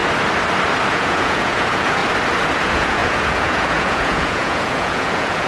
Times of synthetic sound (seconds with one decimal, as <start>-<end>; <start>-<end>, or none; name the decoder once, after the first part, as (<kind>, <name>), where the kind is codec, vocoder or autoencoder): 0.9-2.0 (vocoder, Vocos); 2.6-5.5